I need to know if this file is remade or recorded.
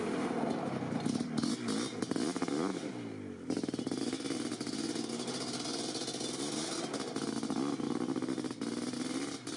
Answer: recorded